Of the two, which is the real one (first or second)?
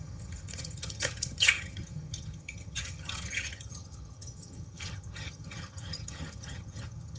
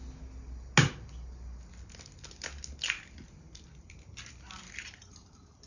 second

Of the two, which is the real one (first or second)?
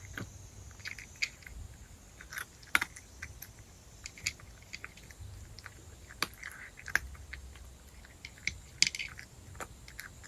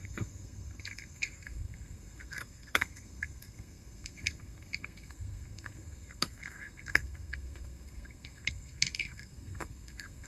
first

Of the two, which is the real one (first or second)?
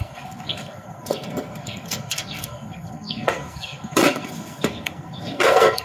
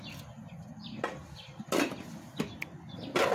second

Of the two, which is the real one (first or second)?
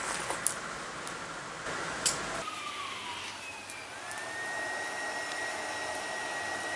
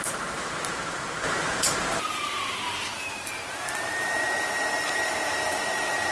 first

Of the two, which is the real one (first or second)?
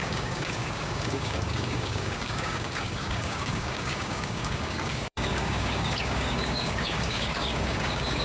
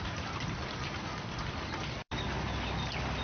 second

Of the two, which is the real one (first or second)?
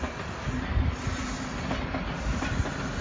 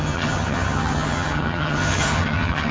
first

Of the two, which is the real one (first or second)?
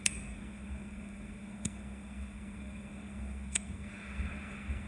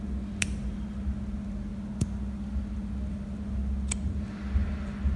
second